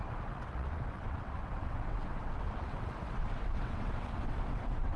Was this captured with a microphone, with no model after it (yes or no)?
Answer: no